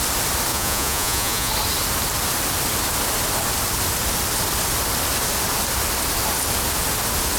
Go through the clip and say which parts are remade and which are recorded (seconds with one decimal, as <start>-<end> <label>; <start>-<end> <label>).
0.0-0.5 recorded; 0.5-1.5 remade; 1.5-7.4 recorded

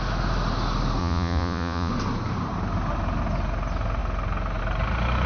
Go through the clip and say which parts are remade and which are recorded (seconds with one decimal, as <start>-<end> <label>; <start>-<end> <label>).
0.0-1.0 recorded; 1.0-1.9 remade; 1.9-5.3 recorded

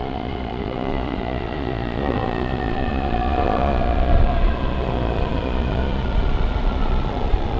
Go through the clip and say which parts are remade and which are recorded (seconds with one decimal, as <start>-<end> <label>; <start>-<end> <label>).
0.0-7.6 remade

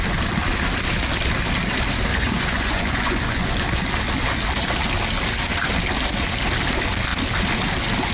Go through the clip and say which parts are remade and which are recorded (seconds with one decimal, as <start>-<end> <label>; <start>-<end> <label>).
0.0-2.1 recorded; 2.1-3.5 remade; 3.5-8.1 recorded

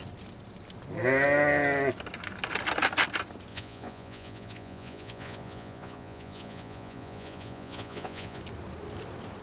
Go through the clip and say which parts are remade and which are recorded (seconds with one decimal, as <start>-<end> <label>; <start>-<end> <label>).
0.0-3.5 recorded; 3.5-8.4 remade; 8.4-9.4 recorded